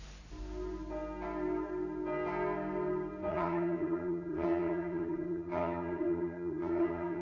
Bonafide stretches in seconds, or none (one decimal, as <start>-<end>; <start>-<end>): 0.0-3.3